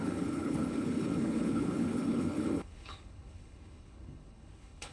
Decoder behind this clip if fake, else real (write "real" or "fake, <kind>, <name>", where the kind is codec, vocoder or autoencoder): fake, codec, HILCodec